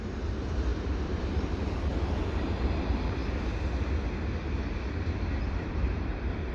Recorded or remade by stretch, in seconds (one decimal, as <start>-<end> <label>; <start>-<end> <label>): 0.0-1.9 remade; 1.9-2.4 recorded; 2.4-3.2 remade; 3.2-5.4 recorded; 5.4-6.5 remade